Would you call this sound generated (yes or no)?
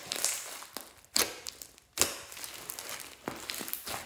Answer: no